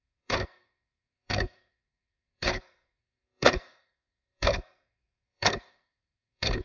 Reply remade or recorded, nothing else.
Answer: remade